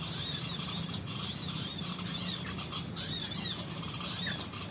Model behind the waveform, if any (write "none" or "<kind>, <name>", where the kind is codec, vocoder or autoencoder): vocoder, BigVGAN v2